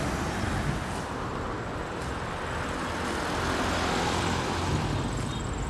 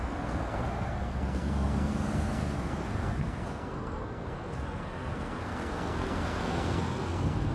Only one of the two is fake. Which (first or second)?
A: second